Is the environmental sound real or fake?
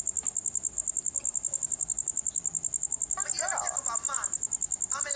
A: real